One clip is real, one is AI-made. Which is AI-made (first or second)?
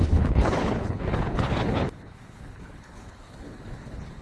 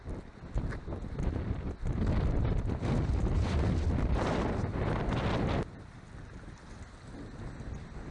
first